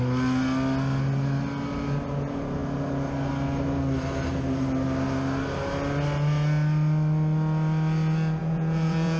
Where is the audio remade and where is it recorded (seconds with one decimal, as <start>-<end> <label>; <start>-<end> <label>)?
0.0-8.4 recorded; 8.4-9.2 remade